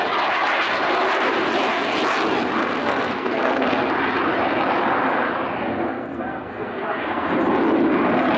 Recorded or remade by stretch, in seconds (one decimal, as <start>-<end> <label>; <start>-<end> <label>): 0.0-2.6 recorded; 2.6-3.9 remade; 3.9-5.7 recorded; 5.7-7.3 remade; 7.3-8.4 recorded